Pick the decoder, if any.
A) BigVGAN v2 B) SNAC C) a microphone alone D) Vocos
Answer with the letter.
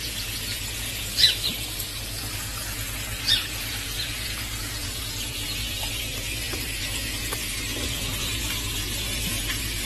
D